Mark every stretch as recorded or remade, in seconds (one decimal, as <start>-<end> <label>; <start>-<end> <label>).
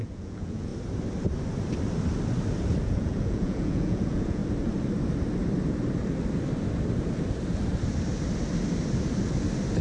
0.0-0.7 remade; 0.7-2.8 recorded; 2.8-4.4 remade; 4.4-9.8 recorded